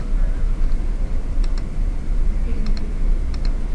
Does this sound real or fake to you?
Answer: real